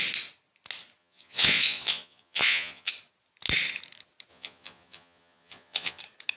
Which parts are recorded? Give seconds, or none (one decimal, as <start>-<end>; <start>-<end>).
0.0-1.0; 2.9-4.3; 6.0-6.4